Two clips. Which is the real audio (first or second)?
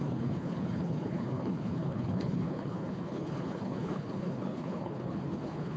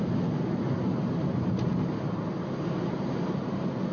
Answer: second